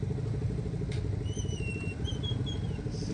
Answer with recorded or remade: recorded